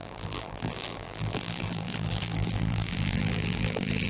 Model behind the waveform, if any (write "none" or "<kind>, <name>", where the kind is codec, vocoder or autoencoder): vocoder, BigVGAN v2